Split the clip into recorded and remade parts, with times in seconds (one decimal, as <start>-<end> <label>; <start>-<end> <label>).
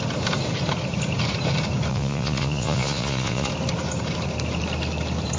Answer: 0.0-1.9 recorded; 1.9-3.5 remade; 3.5-5.4 recorded